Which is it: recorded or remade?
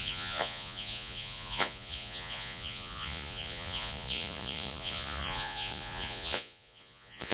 remade